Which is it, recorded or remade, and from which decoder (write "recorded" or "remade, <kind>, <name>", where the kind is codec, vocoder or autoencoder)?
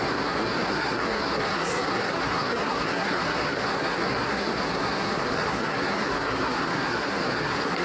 remade, codec, SNAC